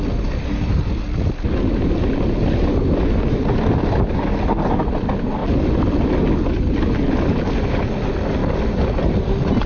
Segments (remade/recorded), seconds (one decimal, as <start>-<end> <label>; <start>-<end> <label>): 0.0-9.7 recorded